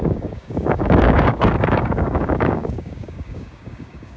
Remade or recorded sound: remade